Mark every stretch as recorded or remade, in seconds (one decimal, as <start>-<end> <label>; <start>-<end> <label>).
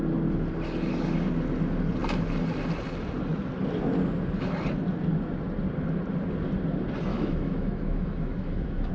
0.0-7.1 recorded; 7.1-8.9 remade